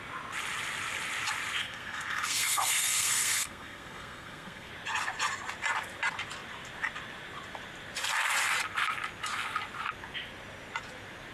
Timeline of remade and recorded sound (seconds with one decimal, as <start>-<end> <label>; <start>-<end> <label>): 0.0-1.6 recorded; 1.6-4.7 remade; 4.7-11.3 recorded